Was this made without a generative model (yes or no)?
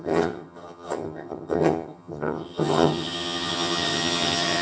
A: no